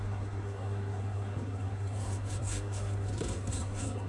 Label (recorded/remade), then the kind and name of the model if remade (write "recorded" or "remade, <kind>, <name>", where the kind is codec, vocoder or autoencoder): remade, codec, SNAC